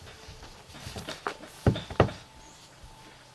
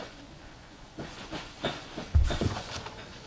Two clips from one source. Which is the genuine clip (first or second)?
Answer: first